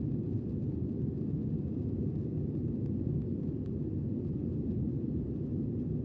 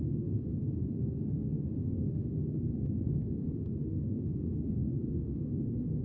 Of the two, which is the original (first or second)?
first